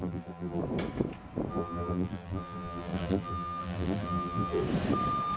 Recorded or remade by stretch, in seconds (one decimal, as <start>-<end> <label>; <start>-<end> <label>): 0.0-0.6 remade; 0.6-1.5 recorded; 1.5-4.6 remade; 4.6-5.4 recorded